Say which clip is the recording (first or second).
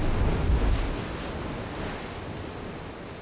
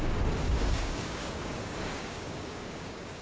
first